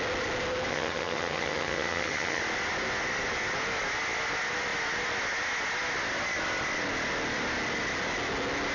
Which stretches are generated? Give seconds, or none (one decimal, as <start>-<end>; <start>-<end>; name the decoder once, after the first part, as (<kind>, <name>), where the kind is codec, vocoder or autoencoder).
0.7-2.4 (vocoder, HiFi-GAN)